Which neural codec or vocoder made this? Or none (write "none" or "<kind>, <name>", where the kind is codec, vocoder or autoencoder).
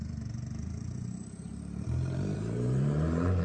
vocoder, BigVGAN v2